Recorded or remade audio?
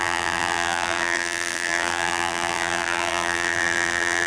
remade